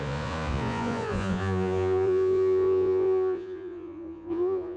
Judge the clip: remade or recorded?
remade